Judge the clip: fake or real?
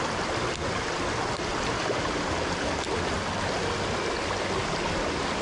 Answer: real